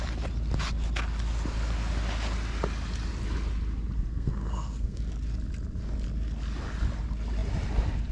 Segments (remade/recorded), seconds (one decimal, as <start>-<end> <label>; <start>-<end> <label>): 0.0-4.1 recorded; 4.1-5.0 remade; 5.0-8.1 recorded